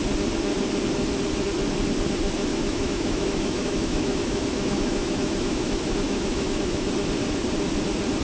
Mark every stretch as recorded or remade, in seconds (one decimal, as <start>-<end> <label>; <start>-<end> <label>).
0.0-2.5 recorded; 2.5-6.9 remade; 6.9-8.2 recorded